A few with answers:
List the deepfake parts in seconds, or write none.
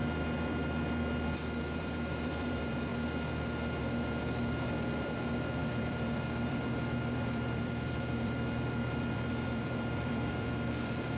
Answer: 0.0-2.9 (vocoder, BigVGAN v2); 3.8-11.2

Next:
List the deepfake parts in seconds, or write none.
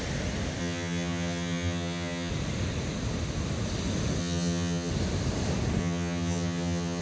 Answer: 0.6-2.3 (vocoder, HiFi-GAN); 4.2-4.9; 5.8-7.0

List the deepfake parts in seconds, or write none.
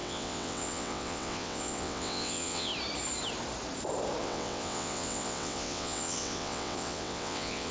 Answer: 0.0-2.7 (vocoder, WaveNeXt); 4.2-7.7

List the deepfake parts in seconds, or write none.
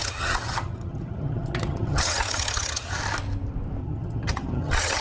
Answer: 0.0-3.0 (vocoder, HiFi-GAN); 3.8-5.0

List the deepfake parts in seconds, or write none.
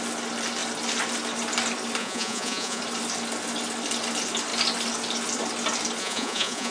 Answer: 2.0-2.8 (vocoder, Vocos); 6.0-6.7